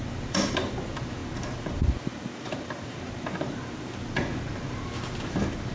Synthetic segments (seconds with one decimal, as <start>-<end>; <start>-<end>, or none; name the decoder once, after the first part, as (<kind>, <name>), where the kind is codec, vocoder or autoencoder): none